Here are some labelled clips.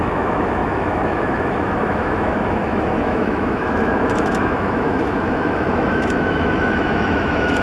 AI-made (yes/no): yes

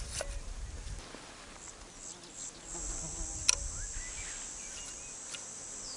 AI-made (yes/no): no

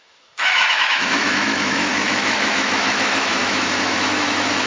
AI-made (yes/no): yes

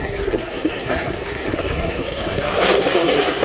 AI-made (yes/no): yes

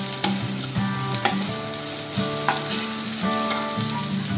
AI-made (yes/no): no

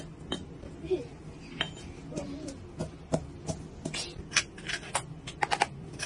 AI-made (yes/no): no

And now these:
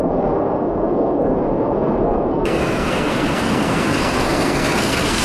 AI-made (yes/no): yes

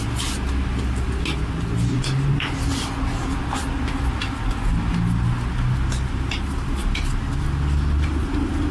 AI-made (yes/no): no